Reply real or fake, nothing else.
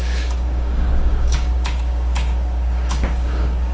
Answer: fake